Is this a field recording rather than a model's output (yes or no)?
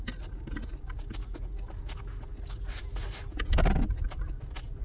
yes